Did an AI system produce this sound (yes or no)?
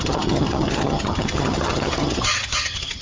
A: yes